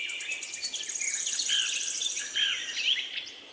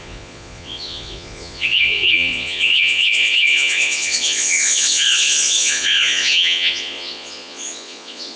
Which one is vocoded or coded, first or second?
second